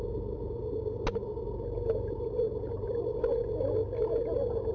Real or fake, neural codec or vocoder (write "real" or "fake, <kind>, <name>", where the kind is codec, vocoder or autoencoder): real